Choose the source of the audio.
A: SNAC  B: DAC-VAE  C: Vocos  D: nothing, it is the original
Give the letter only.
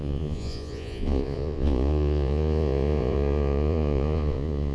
C